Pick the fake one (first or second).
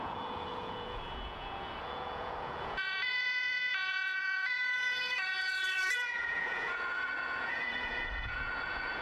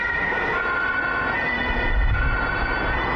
first